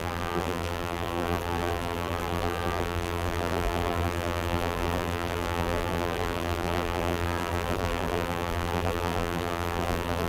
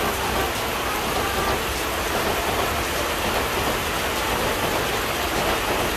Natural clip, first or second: second